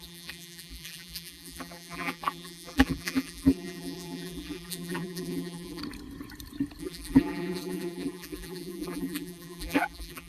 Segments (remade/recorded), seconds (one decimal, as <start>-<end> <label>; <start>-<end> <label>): 0.0-5.8 remade; 5.8-6.8 recorded; 6.8-10.3 remade